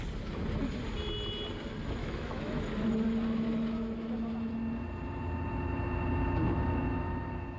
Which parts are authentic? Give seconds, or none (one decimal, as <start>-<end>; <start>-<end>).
0.0-2.0; 2.6-7.6